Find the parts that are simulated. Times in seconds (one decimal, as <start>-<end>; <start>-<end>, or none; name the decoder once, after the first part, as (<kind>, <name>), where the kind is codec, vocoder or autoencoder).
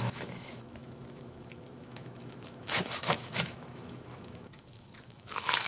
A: 0.0-5.7 (autoencoder, DAC-VAE)